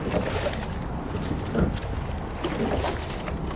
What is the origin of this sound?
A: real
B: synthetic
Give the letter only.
A